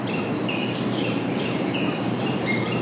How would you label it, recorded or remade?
remade